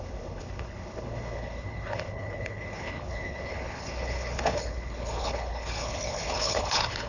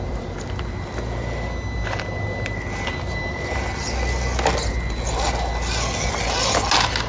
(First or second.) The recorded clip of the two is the second